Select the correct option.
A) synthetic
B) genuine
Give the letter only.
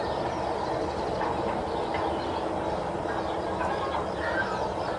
B